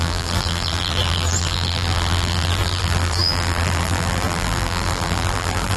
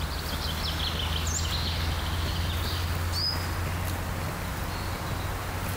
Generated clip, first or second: first